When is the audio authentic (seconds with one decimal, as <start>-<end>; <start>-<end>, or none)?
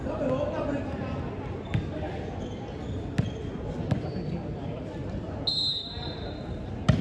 0.0-7.0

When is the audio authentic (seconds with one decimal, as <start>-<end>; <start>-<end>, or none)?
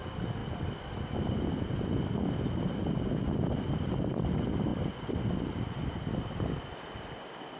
0.0-7.6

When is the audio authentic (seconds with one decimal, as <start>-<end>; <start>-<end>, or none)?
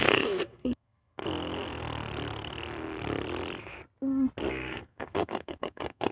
1.2-4.5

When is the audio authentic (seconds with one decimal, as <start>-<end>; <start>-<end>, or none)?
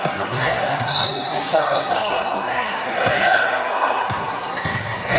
none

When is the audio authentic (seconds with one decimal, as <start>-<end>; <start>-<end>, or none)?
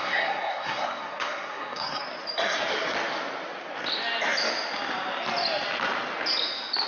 2.0-6.9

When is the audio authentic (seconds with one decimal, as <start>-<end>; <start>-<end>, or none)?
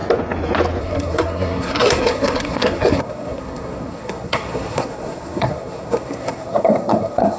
0.0-0.8